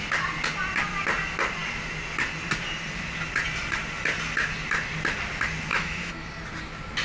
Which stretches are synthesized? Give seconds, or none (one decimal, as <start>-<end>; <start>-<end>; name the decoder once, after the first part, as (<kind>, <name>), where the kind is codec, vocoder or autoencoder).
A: 5.7-6.3 (autoencoder, DAC-VAE)